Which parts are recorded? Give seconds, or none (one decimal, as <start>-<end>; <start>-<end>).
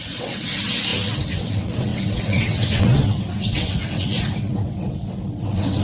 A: none